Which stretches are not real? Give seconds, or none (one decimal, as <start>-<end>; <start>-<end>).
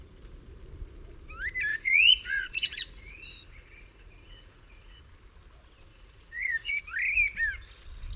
1.7-5.0; 5.9-6.8